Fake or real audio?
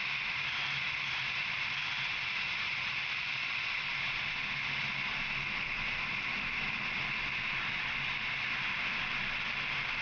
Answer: real